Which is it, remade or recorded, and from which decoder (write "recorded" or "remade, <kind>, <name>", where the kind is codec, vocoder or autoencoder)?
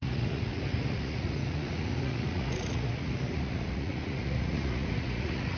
remade, vocoder, Vocos